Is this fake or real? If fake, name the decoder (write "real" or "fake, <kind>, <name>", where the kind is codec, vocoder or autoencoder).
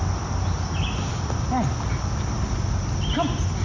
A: real